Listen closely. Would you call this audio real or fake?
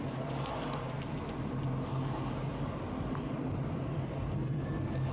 real